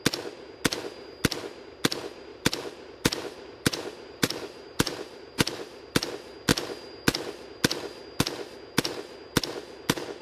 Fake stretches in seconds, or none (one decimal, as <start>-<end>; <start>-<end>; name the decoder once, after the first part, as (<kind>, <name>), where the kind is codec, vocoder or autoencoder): 2.3-6.1 (vocoder, BigVGAN v2)